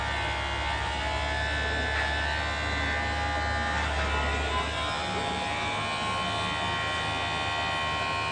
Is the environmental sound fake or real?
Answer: real